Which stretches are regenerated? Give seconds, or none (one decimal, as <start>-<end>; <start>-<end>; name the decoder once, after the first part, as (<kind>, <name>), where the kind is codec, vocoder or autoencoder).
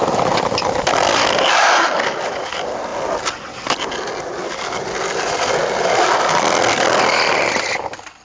none